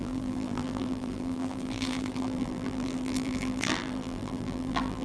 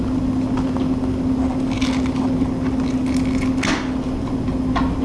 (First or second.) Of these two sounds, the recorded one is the second